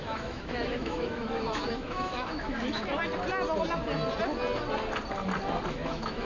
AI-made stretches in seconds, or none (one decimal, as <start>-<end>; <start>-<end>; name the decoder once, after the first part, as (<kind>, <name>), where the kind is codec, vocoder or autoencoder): 0.0-2.8 (autoencoder, DAC-VAE); 5.7-6.2